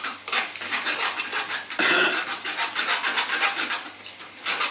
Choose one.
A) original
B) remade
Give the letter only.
A